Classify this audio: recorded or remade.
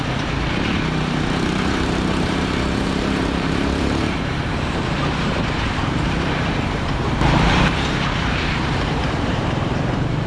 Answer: remade